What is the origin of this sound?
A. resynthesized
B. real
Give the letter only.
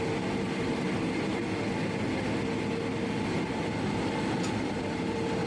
B